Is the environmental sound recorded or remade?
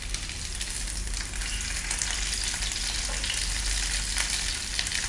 recorded